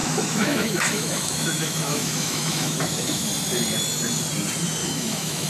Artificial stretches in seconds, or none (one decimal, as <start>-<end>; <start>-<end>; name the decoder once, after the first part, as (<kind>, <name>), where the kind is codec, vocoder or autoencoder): 0.0-3.3 (autoencoder, DAC-VAE); 4.8-5.5